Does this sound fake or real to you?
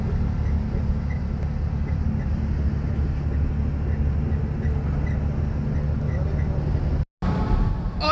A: real